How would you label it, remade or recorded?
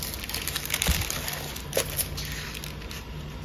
recorded